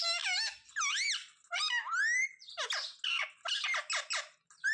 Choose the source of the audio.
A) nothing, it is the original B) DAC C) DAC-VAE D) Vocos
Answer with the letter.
A